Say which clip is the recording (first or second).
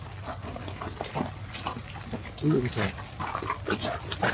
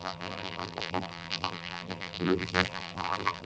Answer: first